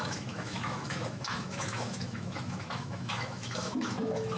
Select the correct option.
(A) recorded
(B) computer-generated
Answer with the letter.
B